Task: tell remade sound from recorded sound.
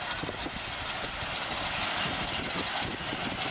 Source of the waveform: recorded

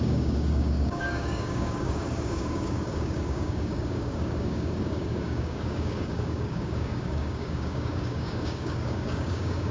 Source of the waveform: remade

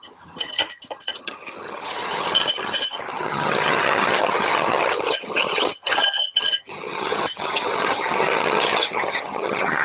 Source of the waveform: remade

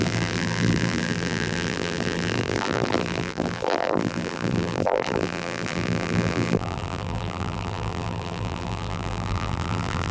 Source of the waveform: remade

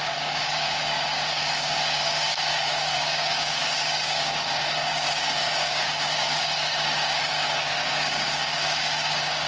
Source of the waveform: remade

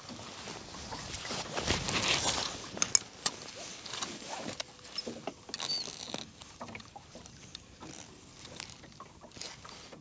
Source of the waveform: recorded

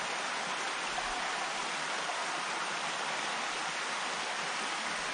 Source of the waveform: recorded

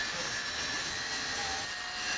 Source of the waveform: recorded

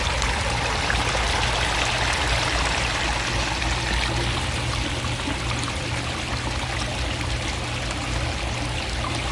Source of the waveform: recorded